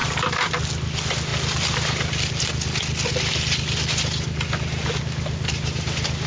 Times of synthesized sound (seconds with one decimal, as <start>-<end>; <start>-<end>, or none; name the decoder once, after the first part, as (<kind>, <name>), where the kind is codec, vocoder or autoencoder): 0.0-0.5 (vocoder, BigVGAN v2); 1.3-2.2